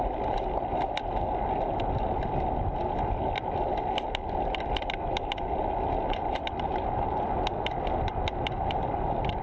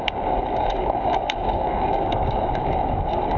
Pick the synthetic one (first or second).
second